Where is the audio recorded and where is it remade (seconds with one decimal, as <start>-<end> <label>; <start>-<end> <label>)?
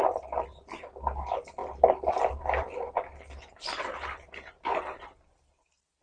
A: 0.0-6.0 recorded